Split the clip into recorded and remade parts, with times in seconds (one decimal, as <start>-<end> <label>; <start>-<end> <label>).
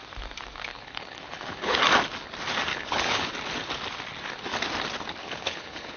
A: 0.0-0.7 recorded; 0.7-1.8 remade; 1.8-2.7 recorded; 2.7-3.3 remade; 3.3-5.2 recorded; 5.2-6.0 remade